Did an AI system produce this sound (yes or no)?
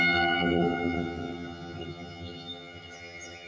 yes